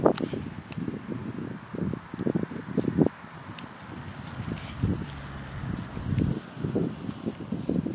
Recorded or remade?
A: recorded